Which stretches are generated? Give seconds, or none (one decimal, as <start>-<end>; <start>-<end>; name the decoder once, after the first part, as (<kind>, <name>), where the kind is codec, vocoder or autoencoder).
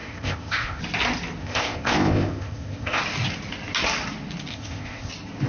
0.0-0.8 (codec, ZipCodec); 1.4-3.0; 4.5-5.1